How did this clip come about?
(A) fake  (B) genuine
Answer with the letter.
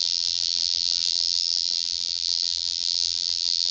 A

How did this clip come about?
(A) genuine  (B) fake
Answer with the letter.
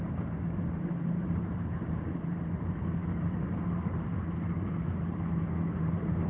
B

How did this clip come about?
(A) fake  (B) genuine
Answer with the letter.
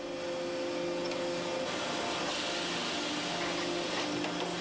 B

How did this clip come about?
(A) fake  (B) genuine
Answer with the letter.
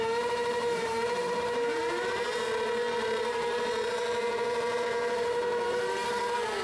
A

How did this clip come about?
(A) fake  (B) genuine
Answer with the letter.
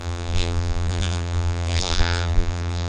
A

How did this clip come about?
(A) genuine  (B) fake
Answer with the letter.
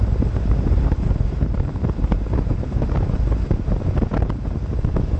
B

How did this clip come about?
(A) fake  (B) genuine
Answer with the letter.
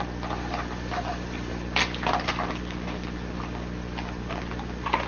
A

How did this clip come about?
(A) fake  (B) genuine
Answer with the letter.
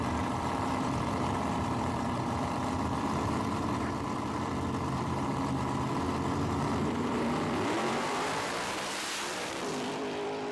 A